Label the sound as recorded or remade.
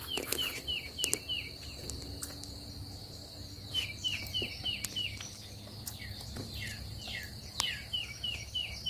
recorded